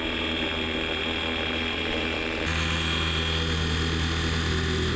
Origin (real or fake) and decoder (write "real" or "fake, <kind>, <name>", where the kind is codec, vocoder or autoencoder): real